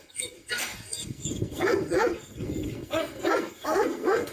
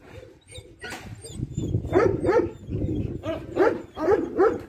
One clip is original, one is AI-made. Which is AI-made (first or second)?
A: first